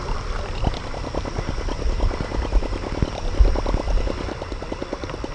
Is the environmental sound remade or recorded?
recorded